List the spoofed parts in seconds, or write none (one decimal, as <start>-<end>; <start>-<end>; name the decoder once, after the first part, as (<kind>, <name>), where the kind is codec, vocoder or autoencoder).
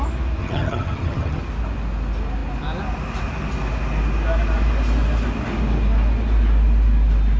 0.4-1.4 (vocoder, HiFi-GAN)